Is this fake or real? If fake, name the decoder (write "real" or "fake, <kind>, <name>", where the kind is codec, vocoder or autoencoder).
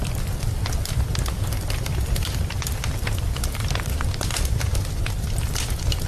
fake, vocoder, BigVGAN v2